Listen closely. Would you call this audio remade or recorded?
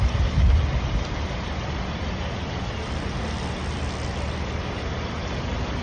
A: recorded